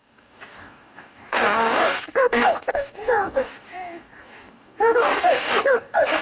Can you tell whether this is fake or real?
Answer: fake